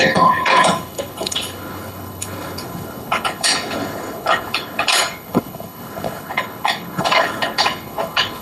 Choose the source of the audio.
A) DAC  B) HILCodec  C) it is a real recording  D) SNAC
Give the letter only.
B